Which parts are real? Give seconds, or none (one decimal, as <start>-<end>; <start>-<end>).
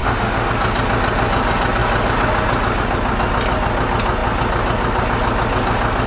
0.5-6.1